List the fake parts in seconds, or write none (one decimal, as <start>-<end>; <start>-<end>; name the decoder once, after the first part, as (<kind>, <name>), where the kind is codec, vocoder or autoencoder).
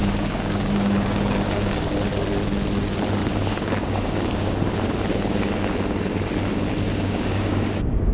0.0-1.9 (codec, DAC); 3.2-4.7; 6.9-8.1